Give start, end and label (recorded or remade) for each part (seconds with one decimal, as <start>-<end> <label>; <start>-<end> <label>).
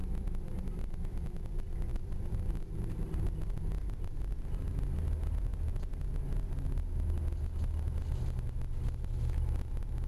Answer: 0.0-1.0 remade; 1.0-1.9 recorded; 1.9-3.2 remade; 3.2-10.1 recorded